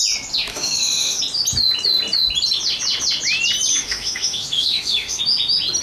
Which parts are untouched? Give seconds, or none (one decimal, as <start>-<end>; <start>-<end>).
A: 0.0-0.5; 1.2-3.7; 5.2-5.8